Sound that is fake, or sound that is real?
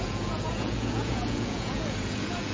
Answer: fake